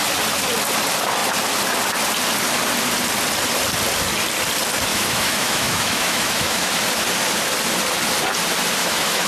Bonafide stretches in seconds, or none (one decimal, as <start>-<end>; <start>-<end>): 0.0-4.9; 6.7-8.8